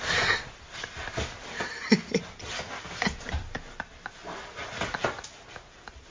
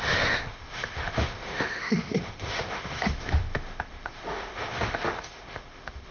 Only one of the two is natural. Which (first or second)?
first